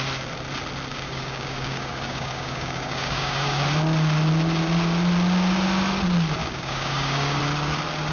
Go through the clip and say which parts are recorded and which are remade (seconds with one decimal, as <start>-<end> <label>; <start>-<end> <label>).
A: 0.0-0.9 recorded; 0.9-3.6 remade; 3.6-6.4 recorded; 6.4-7.4 remade; 7.4-8.1 recorded